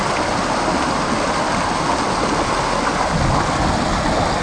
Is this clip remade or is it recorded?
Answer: recorded